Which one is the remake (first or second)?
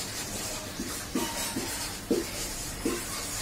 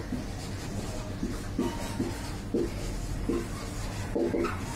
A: first